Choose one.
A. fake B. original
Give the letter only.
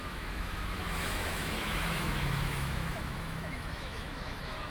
A